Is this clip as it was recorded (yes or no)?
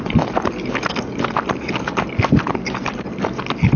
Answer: yes